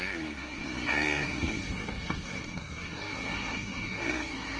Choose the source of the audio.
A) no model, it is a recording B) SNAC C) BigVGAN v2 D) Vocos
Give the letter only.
B